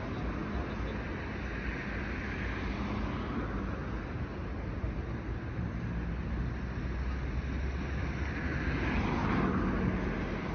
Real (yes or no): yes